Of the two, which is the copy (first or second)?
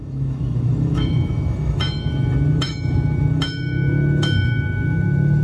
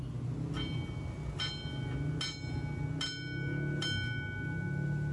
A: first